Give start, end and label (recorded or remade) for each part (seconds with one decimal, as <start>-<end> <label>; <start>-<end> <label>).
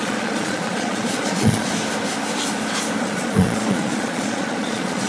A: 0.0-1.7 remade; 1.7-3.0 recorded; 3.0-5.1 remade